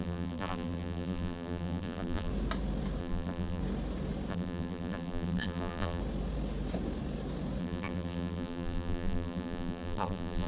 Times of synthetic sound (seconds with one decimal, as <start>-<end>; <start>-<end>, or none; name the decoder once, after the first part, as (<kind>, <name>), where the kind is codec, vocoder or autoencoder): 0.0-2.3 (vocoder, BigVGAN v2); 3.0-3.6; 4.3-6.0; 7.6-10.5